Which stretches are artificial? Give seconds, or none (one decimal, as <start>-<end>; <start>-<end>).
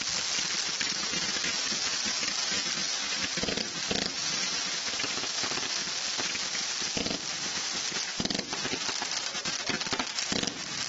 0.0-10.9